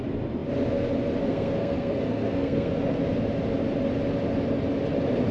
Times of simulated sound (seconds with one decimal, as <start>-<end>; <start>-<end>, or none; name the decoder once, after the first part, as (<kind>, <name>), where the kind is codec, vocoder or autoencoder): 1.3-2.7 (codec, SNAC)